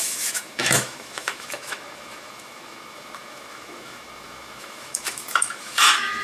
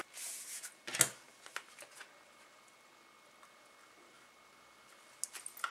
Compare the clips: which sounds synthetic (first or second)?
first